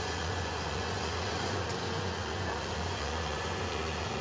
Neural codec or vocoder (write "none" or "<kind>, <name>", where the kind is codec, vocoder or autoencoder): vocoder, Vocos